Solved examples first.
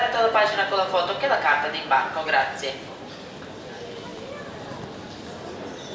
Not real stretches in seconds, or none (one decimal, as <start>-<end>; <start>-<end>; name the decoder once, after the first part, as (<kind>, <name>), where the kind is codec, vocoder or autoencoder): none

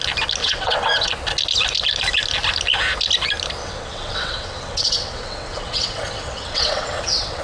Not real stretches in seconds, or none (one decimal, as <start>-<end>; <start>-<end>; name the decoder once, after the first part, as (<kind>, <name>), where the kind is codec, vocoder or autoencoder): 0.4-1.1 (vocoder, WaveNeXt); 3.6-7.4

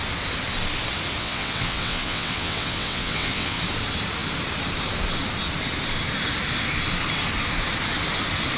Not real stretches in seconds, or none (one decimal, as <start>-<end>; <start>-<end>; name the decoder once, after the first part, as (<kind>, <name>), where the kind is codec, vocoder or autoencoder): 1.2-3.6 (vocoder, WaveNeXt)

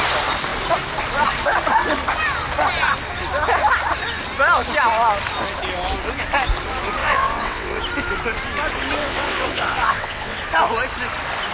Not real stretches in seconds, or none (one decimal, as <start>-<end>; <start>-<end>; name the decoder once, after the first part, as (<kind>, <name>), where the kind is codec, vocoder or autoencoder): 7.0-7.8 (vocoder, WaveNeXt); 9.0-10.4

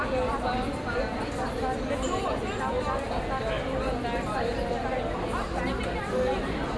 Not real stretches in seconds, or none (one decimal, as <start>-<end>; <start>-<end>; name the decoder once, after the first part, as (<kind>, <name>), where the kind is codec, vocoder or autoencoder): none

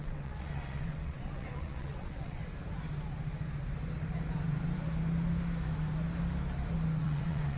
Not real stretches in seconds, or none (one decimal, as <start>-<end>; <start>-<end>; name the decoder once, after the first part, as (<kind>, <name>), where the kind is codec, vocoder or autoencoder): 0.0-2.4 (vocoder, WaveNeXt); 7.0-7.6

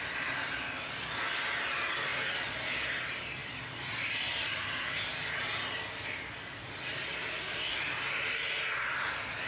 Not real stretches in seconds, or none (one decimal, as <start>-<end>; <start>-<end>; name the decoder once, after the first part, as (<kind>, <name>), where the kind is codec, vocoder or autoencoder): none